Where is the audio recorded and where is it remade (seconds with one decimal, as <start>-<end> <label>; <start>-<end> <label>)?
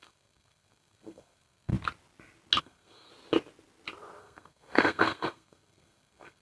0.0-1.7 remade; 1.7-2.6 recorded; 2.6-3.1 remade; 3.1-4.2 recorded; 4.2-6.4 remade